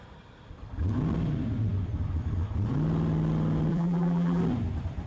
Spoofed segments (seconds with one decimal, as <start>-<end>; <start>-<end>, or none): 3.7-4.4